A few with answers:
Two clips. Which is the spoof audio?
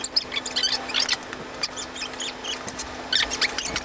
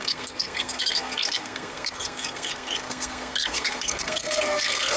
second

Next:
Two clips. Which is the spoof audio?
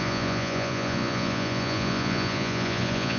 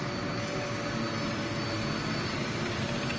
first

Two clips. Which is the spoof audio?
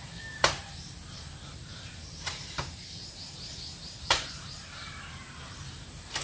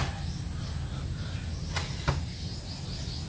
first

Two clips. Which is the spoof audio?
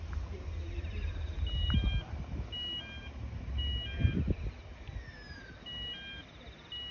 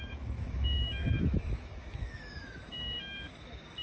second